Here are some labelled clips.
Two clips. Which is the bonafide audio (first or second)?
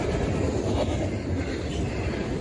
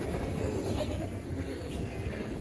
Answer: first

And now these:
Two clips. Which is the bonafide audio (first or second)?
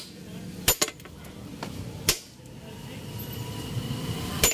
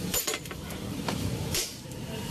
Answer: first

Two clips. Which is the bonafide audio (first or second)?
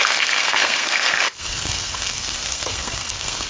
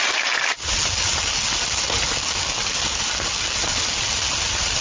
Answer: second